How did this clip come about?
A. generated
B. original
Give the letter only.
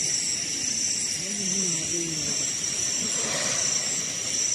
B